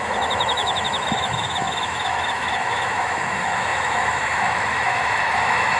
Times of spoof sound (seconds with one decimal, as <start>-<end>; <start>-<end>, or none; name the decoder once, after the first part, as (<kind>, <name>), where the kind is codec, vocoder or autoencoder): 0.0-5.8 (autoencoder, DAC-VAE)